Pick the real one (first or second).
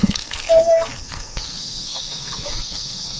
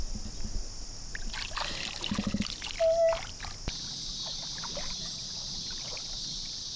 second